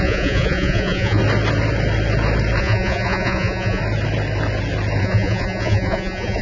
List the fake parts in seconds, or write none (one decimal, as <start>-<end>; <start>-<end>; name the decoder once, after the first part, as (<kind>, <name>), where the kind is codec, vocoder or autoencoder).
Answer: 0.0-1.2 (vocoder, Vocos); 2.6-3.8; 5.0-6.4